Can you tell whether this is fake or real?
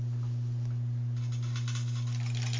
real